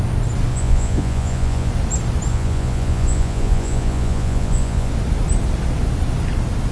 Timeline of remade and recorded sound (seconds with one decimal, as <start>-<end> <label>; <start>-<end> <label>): 0.0-0.5 recorded; 0.5-1.7 remade; 1.7-2.3 recorded; 2.3-4.9 remade; 4.9-6.7 recorded